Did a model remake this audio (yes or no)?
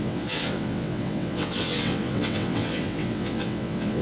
yes